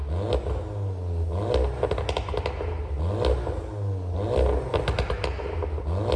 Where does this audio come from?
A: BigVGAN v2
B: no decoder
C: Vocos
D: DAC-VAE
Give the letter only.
B